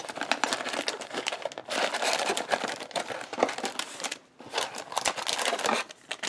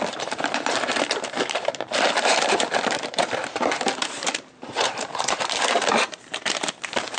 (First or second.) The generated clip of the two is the second